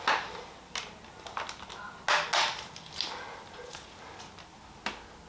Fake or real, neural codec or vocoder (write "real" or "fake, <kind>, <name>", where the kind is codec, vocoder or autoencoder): real